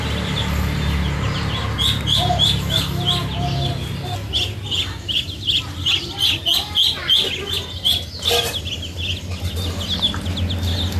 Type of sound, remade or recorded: recorded